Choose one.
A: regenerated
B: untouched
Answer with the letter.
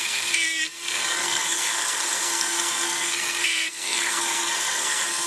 A